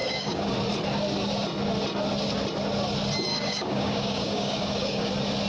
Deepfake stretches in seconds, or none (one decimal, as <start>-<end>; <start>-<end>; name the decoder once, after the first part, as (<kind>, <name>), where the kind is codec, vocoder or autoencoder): 0.0-0.5 (codec, DAC); 3.3-5.1